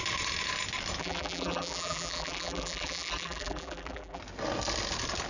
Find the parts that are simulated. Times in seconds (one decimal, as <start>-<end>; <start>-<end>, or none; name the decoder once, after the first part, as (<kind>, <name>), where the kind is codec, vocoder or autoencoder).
1.0-4.2 (vocoder, BigVGAN v2)